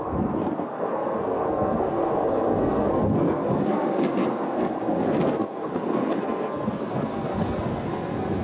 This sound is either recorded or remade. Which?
remade